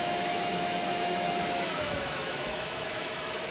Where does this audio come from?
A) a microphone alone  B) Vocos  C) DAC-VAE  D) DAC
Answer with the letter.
C